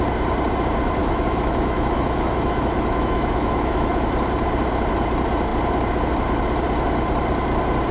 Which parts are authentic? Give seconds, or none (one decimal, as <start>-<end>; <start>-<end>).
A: 0.0-1.0; 4.1-7.9